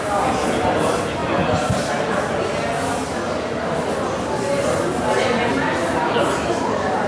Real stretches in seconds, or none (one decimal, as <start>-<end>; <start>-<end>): 0.0-7.1